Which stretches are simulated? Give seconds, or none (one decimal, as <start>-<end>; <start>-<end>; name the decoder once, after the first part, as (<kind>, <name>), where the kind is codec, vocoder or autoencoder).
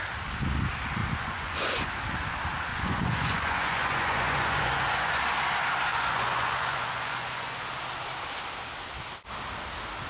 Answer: 1.0-1.9 (vocoder, Vocos); 2.7-5.2; 5.9-7.7